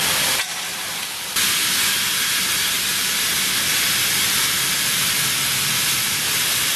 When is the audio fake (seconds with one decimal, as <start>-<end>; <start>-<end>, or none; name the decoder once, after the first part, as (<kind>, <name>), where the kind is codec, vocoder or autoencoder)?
none